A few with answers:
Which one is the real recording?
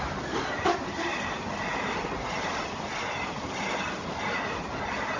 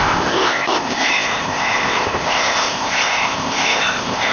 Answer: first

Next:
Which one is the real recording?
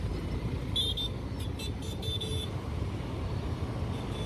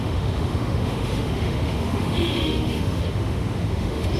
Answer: first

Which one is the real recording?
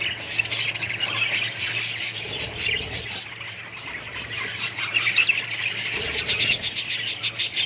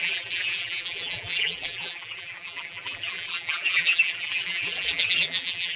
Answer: first